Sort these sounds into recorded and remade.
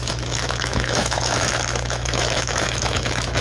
remade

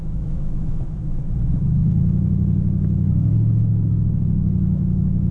remade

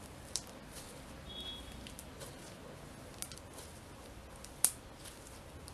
recorded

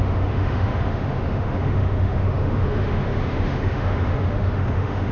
remade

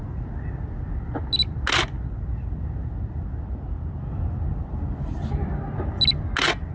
recorded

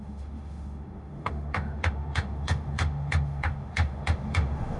remade